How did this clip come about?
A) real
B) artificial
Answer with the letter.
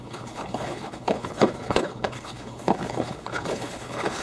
B